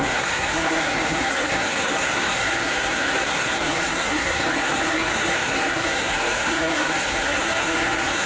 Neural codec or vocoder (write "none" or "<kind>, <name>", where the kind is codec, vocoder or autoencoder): codec, SNAC